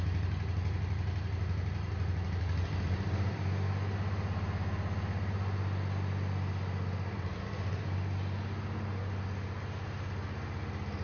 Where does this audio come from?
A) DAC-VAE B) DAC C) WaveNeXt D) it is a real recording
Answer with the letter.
D